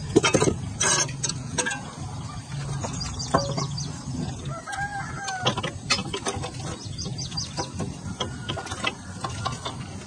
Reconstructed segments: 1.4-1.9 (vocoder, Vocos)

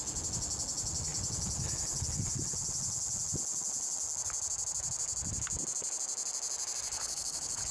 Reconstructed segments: 6.9-7.7 (codec, HILCodec)

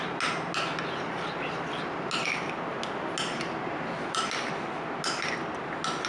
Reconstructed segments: none

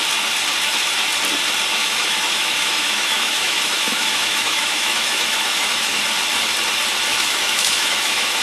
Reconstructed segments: 1.8-6.0 (autoencoder, DAC-VAE); 7.1-8.4

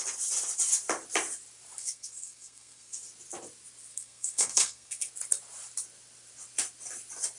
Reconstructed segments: 1.8-3.0 (codec, SNAC); 3.9-5.1